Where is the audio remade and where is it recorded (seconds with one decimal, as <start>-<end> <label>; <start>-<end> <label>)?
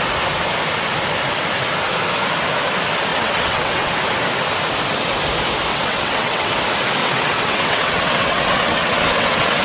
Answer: 0.0-3.1 recorded; 3.1-3.9 remade; 3.9-5.7 recorded; 5.7-6.6 remade; 6.6-7.0 recorded; 7.0-9.6 remade